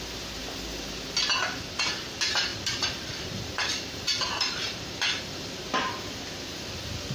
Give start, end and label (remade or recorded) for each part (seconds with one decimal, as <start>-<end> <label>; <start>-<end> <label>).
0.0-2.5 recorded; 2.5-7.1 remade